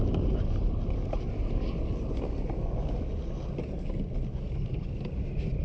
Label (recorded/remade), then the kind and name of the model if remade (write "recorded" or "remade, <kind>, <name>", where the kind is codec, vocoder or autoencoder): recorded